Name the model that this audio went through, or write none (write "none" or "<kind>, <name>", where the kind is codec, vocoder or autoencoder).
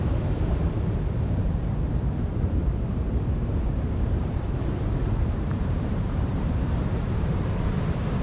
vocoder, BigVGAN v2